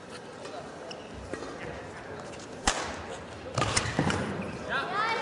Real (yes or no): yes